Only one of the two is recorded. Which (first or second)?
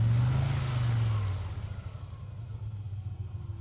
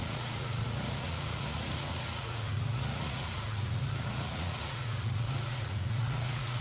first